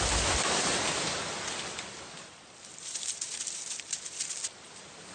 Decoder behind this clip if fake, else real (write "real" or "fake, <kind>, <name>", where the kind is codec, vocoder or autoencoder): real